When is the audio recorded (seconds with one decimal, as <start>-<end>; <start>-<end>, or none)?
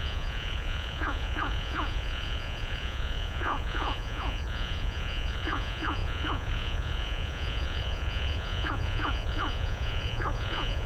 none